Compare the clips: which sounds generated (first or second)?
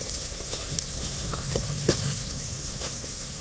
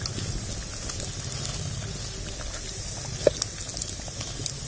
first